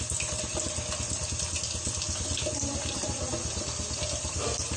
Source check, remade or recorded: recorded